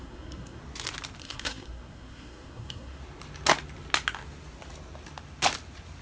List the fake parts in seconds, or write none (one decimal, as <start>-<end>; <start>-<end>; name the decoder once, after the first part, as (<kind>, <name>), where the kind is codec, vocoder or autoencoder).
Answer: 0.0-0.6 (codec, SNAC); 1.2-3.0